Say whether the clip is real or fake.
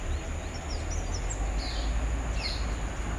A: real